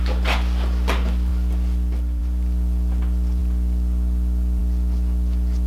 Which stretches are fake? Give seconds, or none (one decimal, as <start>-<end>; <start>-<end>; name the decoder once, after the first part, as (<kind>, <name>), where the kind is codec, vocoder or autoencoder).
none